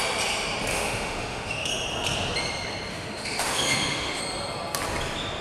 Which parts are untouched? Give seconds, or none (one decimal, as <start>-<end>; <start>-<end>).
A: 0.0-0.7; 1.7-2.9; 4.2-5.4